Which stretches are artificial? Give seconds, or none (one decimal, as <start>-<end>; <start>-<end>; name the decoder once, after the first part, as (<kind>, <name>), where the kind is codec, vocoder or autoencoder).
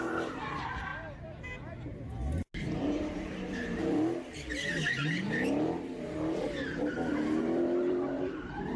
0.0-0.9 (vocoder, BigVGAN v2); 2.6-3.8; 7.4-8.8